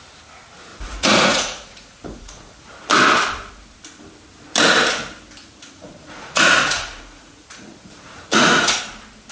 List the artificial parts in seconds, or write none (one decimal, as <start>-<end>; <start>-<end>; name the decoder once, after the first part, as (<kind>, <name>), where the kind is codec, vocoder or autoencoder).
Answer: 0.7-2.7 (vocoder, Vocos); 5.4-8.8